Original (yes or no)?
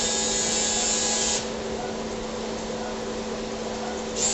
yes